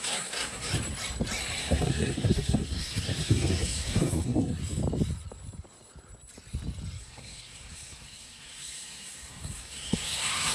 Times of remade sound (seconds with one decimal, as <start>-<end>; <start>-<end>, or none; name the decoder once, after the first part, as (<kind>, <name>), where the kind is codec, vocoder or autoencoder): 0.0-0.7 (codec, SNAC); 1.6-4.6; 7.0-10.5